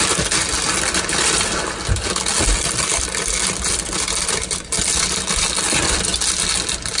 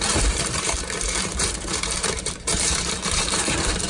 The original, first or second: first